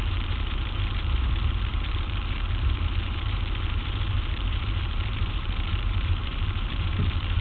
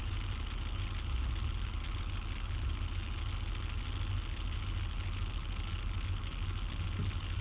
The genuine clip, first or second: second